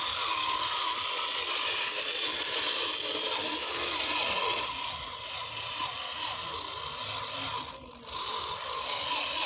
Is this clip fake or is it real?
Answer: real